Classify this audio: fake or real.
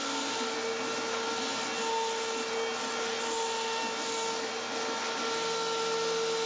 real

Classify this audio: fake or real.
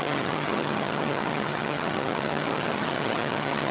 fake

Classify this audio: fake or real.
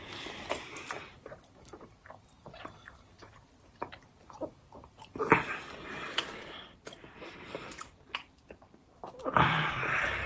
real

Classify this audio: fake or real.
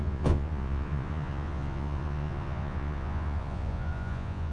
fake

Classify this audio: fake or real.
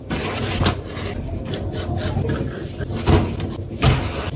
real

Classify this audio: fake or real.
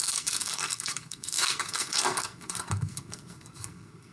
fake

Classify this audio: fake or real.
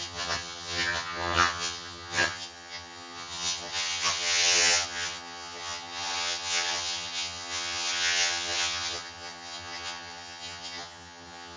fake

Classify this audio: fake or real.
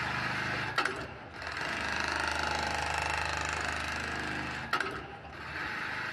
real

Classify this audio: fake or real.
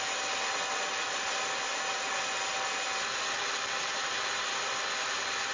real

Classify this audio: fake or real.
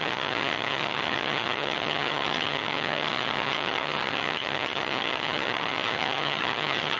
fake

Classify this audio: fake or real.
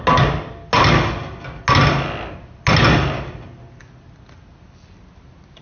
real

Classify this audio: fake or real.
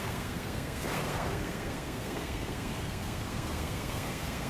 fake